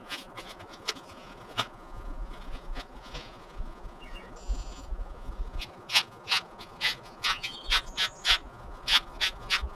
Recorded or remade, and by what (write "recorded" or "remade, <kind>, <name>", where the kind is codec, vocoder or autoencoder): remade, vocoder, Vocos